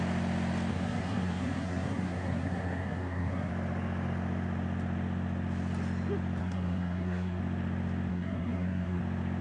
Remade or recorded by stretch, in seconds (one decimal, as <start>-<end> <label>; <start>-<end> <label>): 0.0-0.7 recorded; 0.7-3.5 remade; 3.5-6.4 recorded; 6.4-7.4 remade; 7.4-8.1 recorded; 8.1-9.0 remade; 9.0-9.4 recorded